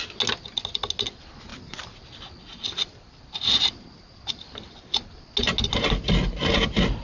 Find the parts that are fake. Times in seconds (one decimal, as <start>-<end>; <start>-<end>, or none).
none